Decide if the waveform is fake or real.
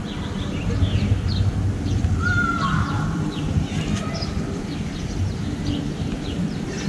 real